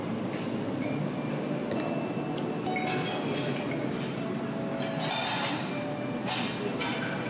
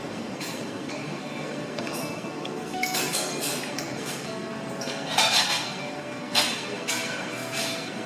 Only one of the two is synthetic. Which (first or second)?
second